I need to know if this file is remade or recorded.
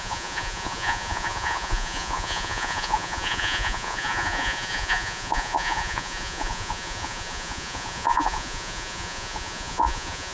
remade